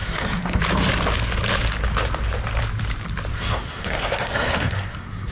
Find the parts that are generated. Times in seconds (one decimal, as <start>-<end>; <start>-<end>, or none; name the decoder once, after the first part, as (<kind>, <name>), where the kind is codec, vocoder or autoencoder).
0.0-0.6 (codec, SNAC); 3.3-5.3